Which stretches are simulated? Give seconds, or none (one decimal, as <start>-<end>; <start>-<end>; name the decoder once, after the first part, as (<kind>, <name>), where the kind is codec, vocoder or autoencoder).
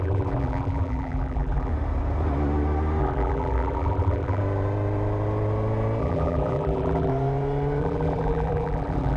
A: 0.0-1.7 (vocoder, BigVGAN v2); 3.0-4.4; 6.0-7.1; 7.8-9.2